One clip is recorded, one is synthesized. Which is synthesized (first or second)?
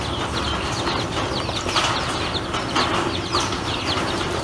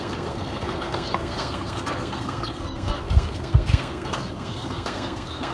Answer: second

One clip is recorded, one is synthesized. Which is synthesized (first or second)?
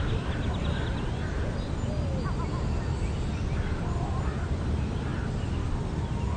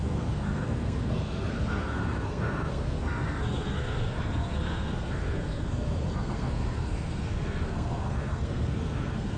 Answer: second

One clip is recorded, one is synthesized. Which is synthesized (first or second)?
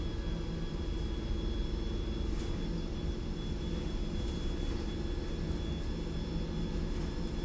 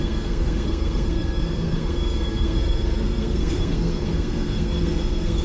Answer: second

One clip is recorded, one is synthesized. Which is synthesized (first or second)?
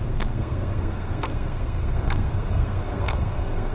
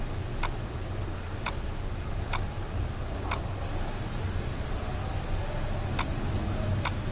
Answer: first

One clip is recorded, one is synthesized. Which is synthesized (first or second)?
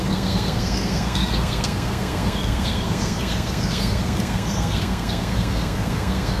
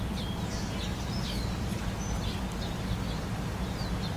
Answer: first